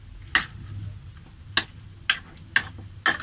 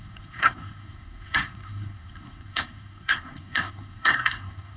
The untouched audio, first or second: first